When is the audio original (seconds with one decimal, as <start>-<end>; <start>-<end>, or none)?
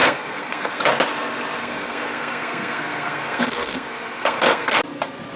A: 0.8-1.6; 4.8-5.4